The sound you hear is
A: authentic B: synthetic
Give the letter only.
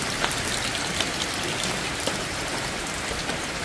A